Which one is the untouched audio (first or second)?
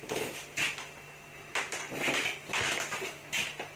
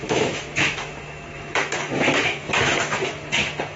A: first